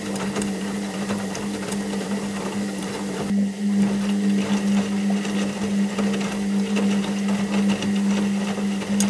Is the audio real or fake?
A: real